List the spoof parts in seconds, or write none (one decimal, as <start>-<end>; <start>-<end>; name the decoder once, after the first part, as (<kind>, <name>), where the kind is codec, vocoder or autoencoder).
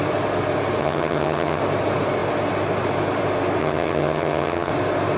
0.8-1.6 (vocoder, HiFi-GAN); 3.6-4.7